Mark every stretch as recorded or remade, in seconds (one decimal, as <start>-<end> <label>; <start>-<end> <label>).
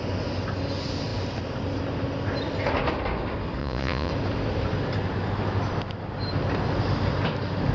0.0-3.6 recorded; 3.6-4.1 remade; 4.1-7.7 recorded